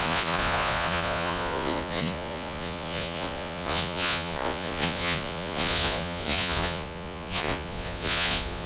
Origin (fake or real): fake